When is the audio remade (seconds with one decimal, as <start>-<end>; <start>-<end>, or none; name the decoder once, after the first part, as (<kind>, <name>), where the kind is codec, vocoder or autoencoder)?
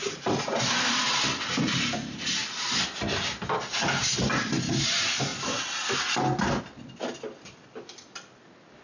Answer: none